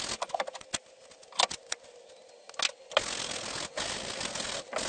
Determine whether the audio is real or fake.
real